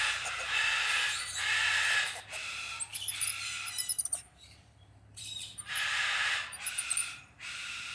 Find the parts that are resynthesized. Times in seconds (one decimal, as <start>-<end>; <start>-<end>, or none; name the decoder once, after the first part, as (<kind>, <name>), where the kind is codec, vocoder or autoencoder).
0.0-7.9 (vocoder, BigVGAN v2)